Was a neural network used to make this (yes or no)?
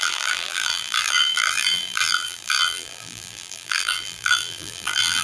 yes